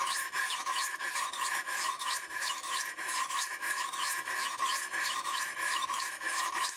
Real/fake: fake